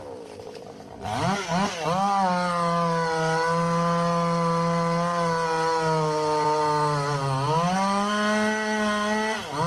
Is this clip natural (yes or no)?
yes